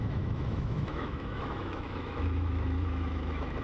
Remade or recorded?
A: remade